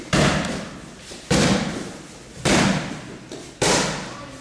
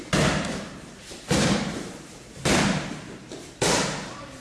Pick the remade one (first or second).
second